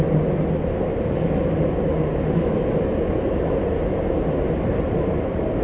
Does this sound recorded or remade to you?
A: recorded